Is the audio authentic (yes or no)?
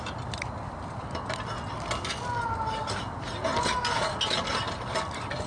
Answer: yes